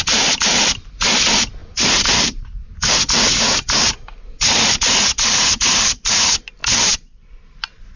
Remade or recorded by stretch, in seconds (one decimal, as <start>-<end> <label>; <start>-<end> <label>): 0.0-8.0 remade